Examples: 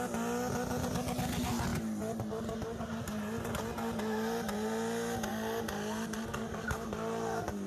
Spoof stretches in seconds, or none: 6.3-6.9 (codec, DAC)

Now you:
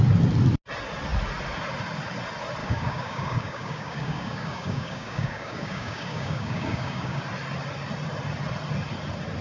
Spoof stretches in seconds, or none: 2.6-7.2 (codec, DAC)

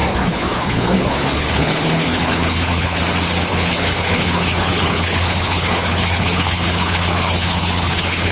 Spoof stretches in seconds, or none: 0.0-3.0 (codec, HILCodec); 3.5-8.3

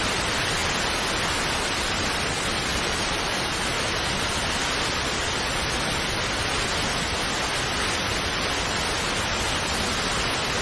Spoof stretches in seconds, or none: 2.7-3.3 (vocoder, BigVGAN v2)

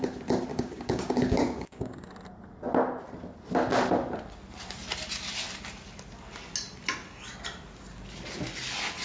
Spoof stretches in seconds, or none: 0.5-2.1 (codec, DAC)

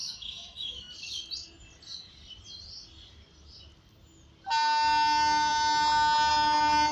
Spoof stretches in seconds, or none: 0.0-0.9 (autoencoder, DAC-VAE)

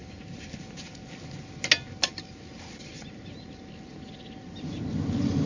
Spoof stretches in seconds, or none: none

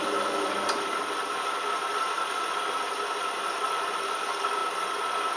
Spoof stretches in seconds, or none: none